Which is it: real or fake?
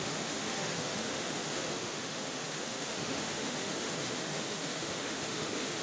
fake